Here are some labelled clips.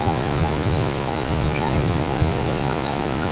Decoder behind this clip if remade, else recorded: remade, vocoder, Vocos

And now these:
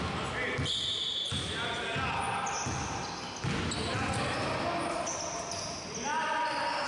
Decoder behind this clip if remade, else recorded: recorded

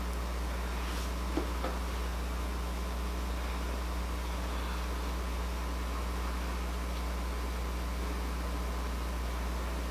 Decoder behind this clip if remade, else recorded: recorded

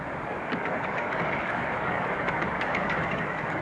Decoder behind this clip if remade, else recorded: remade, codec, DAC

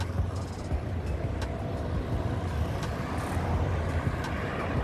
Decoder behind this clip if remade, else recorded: recorded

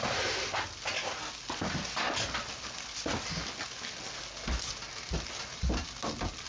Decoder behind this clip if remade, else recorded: recorded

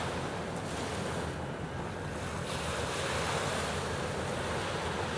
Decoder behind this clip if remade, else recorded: recorded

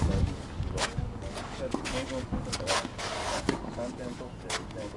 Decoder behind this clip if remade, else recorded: remade, codec, DAC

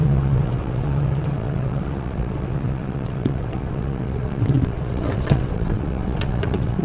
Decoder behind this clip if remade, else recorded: remade, vocoder, WaveNeXt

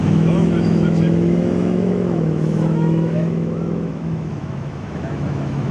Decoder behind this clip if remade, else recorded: remade, autoencoder, DAC-VAE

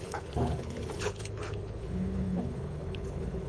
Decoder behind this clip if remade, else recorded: remade, codec, HILCodec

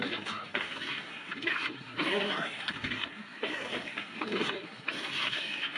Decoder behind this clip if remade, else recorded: remade, codec, SNAC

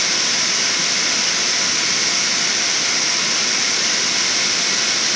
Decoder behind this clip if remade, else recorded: remade, vocoder, BigVGAN v2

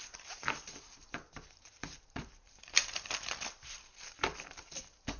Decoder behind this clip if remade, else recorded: remade, vocoder, BigVGAN v2